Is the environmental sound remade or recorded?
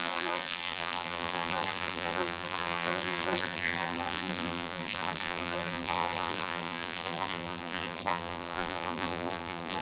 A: remade